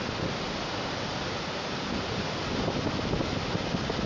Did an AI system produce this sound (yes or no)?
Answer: no